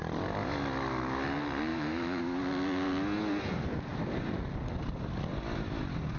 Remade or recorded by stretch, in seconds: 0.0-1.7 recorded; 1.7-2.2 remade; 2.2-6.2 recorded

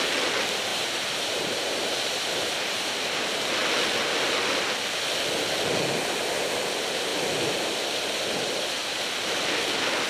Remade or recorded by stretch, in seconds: 0.0-0.7 recorded; 0.7-2.9 remade; 2.9-10.1 recorded